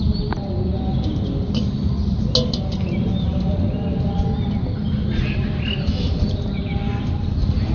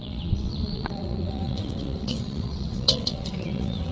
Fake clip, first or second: second